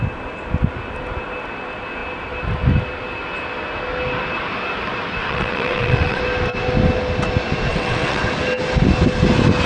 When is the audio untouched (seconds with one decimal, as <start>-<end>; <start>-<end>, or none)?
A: 0.0-5.2; 6.2-7.7; 8.2-9.7